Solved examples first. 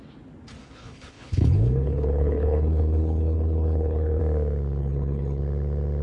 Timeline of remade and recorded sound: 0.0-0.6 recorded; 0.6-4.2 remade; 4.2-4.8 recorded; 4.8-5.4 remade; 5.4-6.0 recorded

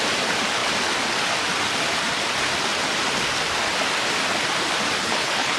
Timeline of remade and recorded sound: 0.0-5.0 recorded; 5.0-5.6 remade

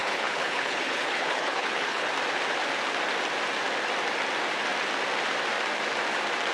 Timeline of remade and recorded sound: 0.0-2.1 remade; 2.1-6.5 recorded

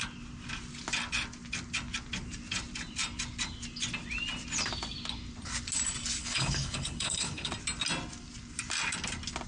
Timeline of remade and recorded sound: 0.0-6.2 recorded; 6.2-7.5 remade; 7.5-9.5 recorded

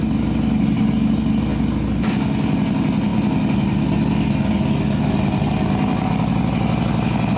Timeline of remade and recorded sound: 0.0-7.4 recorded